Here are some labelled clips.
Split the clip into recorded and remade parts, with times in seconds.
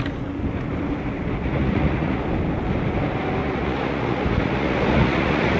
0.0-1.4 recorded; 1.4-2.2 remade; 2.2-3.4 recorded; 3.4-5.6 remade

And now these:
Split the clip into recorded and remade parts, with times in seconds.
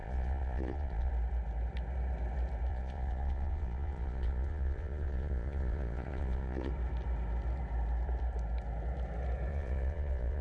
0.0-1.1 remade; 1.1-2.7 recorded; 2.7-6.7 remade; 6.7-9.5 recorded; 9.5-10.4 remade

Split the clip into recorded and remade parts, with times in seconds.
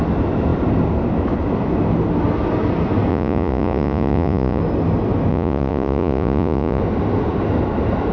0.0-3.1 recorded; 3.1-4.6 remade; 4.6-5.3 recorded; 5.3-6.8 remade; 6.8-8.1 recorded